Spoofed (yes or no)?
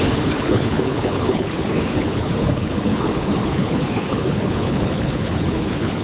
yes